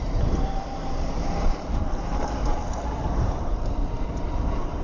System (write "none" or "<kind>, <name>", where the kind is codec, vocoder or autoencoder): vocoder, BigVGAN v2